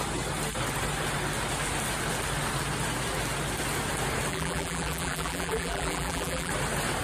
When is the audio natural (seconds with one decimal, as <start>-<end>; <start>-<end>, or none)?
0.0-4.3; 6.5-7.0

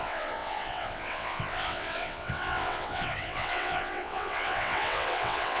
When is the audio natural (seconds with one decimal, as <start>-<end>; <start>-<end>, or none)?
none

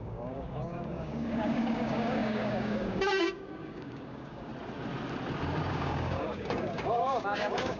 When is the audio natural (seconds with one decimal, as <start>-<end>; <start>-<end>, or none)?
4.5-5.7